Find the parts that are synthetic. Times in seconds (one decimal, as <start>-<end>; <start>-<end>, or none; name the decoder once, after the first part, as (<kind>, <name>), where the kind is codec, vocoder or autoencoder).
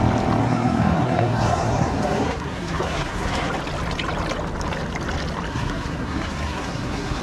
0.4-3.5 (codec, SNAC); 5.5-7.2